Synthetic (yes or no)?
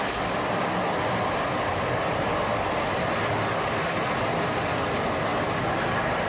no